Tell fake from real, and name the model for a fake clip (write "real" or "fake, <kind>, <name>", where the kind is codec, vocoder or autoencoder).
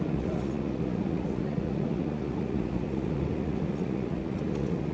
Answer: fake, vocoder, Vocos